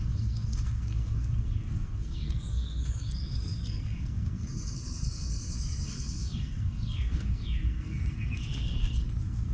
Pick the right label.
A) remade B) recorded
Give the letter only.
A